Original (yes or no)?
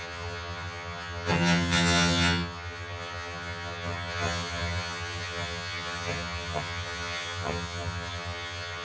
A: no